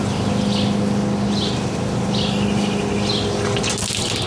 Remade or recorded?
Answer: recorded